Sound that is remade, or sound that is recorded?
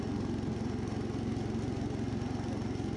recorded